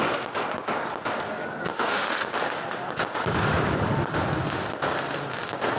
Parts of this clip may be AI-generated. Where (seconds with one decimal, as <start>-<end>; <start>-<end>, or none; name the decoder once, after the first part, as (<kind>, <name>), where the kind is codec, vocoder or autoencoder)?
1.7-2.3 (autoencoder, DAC-VAE)